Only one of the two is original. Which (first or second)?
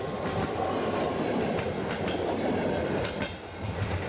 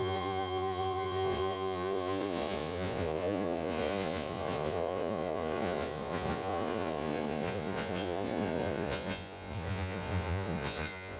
first